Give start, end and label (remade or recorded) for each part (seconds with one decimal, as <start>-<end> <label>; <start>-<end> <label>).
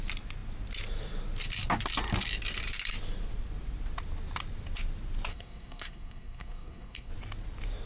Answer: 0.0-5.3 recorded; 5.3-7.1 remade; 7.1-7.9 recorded